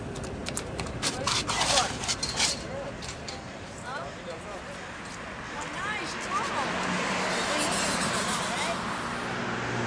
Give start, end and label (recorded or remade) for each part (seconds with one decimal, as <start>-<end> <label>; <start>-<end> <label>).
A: 0.0-0.4 recorded; 0.4-4.7 remade; 4.7-9.9 recorded